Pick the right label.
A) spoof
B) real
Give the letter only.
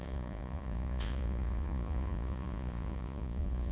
A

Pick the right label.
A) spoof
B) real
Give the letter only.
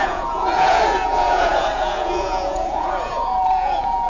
A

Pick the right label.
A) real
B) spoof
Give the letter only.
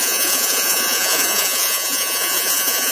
B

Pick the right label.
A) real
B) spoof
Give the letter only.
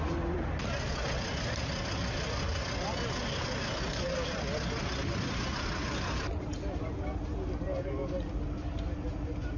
A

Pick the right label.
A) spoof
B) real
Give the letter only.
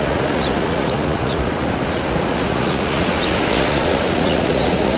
A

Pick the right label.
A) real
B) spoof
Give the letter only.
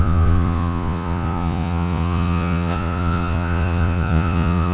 B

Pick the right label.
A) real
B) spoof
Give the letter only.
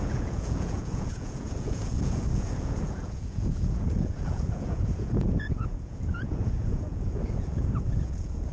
B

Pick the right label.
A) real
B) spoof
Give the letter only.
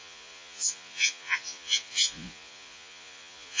B